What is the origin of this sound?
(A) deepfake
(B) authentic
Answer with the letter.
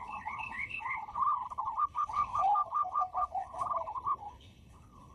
A